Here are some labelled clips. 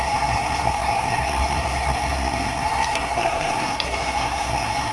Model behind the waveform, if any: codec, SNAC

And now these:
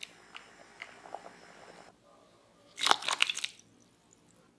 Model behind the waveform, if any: none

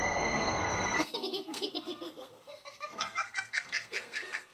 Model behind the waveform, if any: codec, SNAC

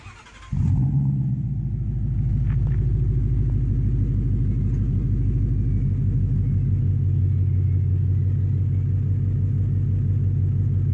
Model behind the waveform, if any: none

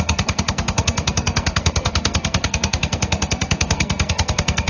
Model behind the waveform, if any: codec, SNAC